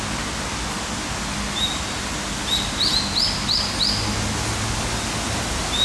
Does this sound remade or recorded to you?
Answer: recorded